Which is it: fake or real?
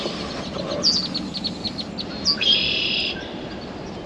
real